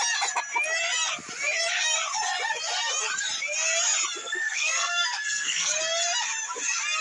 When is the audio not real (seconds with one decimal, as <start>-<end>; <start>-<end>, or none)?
4.2-5.7